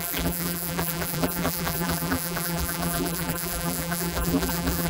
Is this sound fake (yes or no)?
yes